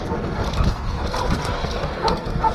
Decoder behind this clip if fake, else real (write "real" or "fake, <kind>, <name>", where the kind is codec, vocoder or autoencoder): fake, codec, SNAC